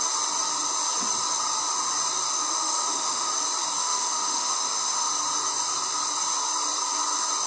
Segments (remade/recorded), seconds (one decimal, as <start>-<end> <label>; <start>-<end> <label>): 0.0-2.3 recorded; 2.3-3.3 remade; 3.3-3.8 recorded; 3.8-5.1 remade; 5.1-7.5 recorded